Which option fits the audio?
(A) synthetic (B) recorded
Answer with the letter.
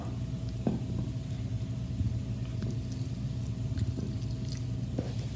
B